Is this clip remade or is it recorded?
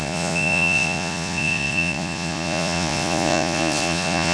remade